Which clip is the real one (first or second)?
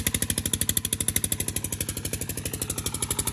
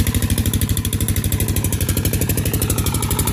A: first